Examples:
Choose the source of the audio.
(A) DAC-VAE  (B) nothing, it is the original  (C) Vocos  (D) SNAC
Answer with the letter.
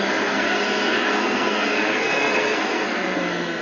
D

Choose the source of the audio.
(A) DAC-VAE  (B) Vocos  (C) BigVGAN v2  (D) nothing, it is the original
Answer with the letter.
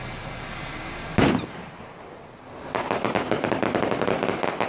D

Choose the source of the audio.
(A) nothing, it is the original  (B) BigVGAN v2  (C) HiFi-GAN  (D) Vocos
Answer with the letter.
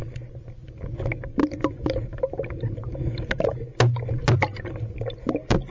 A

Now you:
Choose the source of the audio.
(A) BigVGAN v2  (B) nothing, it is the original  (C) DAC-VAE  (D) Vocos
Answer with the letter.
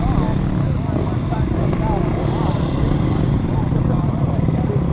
B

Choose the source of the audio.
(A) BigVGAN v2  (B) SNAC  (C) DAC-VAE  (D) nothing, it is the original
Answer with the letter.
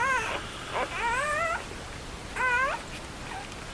D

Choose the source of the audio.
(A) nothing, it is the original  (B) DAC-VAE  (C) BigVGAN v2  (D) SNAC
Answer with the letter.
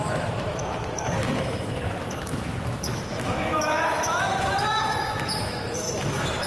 B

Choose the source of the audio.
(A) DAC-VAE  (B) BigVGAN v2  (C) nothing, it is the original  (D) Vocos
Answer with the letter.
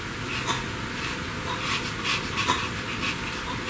C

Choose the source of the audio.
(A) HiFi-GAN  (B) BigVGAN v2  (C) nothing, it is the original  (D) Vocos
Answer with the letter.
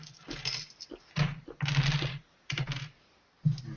C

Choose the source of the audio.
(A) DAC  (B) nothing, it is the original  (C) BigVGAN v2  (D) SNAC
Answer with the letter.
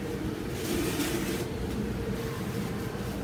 C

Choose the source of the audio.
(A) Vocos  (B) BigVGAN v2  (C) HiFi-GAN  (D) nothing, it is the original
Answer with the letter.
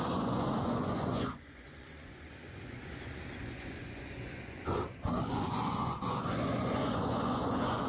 A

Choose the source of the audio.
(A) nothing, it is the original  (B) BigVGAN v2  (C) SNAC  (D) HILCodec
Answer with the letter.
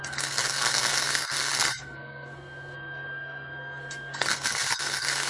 C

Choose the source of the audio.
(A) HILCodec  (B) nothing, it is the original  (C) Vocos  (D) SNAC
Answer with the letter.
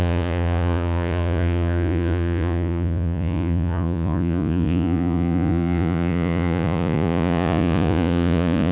C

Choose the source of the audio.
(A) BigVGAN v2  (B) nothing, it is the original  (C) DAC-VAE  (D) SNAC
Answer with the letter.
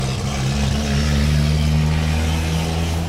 B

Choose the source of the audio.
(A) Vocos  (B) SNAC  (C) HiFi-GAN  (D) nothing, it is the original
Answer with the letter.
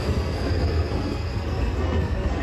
B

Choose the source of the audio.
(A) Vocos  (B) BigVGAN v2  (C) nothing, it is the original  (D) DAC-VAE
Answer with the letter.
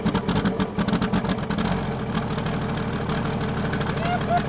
C